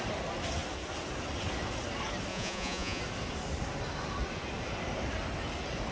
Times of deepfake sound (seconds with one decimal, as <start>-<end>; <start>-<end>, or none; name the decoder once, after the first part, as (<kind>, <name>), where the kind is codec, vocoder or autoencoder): 2.3-3.0 (vocoder, Vocos)